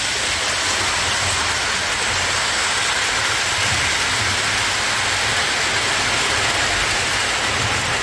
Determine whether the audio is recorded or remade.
recorded